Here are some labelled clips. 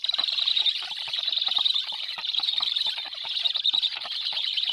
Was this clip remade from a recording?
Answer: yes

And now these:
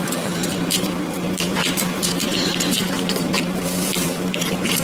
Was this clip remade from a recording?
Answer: yes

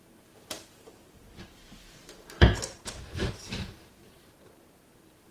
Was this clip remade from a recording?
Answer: yes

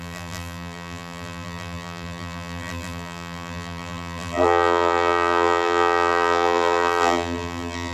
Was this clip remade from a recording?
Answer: yes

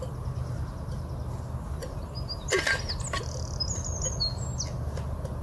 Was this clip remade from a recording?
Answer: no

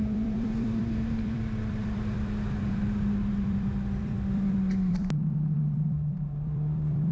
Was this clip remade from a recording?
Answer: yes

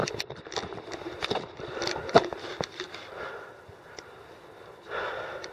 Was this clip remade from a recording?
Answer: no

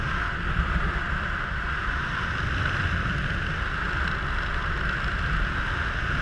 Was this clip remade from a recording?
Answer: no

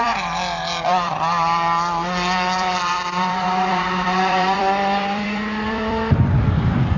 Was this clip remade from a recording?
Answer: yes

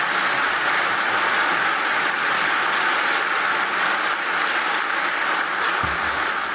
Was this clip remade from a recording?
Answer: no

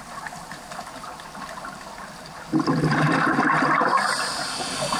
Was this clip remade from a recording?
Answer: no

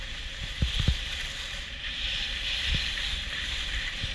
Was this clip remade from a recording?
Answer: yes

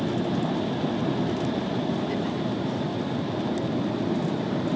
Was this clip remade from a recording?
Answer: no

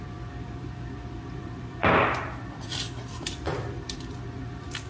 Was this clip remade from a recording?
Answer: yes